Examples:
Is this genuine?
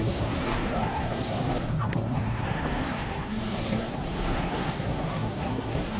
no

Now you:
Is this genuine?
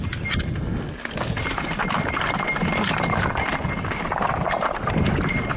yes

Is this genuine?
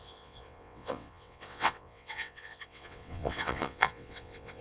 no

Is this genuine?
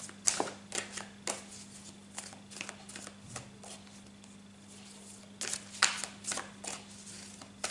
yes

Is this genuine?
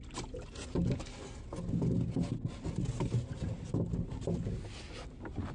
yes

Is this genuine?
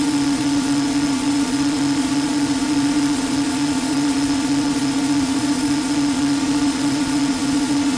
no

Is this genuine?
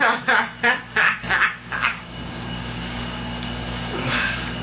no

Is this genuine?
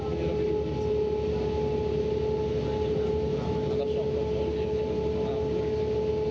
yes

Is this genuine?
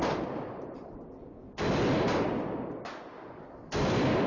no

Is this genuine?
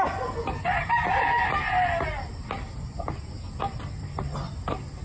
yes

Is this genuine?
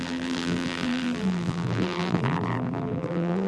no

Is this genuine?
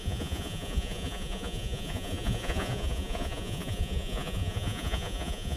no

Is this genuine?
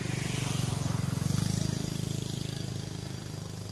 yes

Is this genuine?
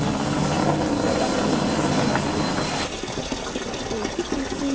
yes